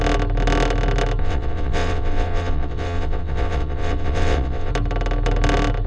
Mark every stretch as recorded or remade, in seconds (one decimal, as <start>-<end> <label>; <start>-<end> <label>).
0.0-1.2 recorded; 1.2-4.7 remade; 4.7-5.9 recorded